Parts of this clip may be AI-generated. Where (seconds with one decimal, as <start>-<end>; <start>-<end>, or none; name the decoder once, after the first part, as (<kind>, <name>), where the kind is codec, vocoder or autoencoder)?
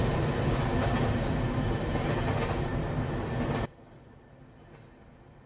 none